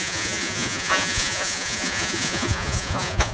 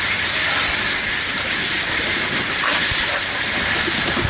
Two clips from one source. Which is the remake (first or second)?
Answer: first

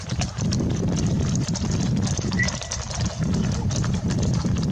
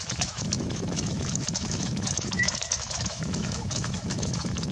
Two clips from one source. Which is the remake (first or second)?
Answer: second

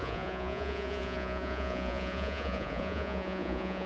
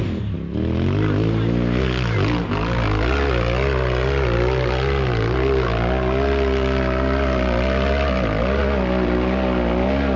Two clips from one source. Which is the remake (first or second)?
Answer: first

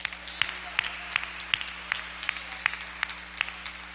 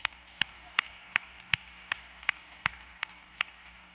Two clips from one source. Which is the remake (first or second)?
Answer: second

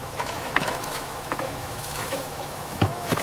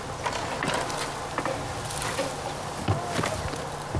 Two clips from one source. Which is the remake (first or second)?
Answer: first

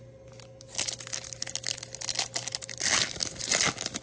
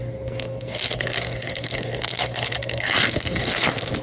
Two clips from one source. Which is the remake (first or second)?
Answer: second